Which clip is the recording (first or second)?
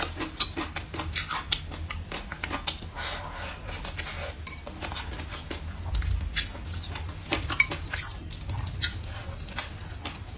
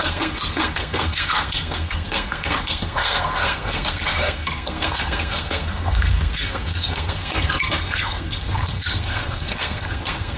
first